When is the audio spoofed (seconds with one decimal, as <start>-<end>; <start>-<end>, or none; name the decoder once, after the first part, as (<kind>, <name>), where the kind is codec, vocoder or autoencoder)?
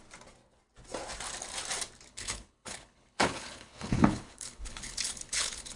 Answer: 2.1-5.8 (codec, HILCodec)